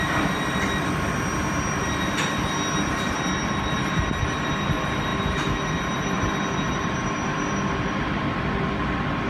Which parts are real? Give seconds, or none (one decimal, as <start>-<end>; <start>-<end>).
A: 0.0-9.3